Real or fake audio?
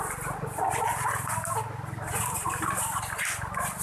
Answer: real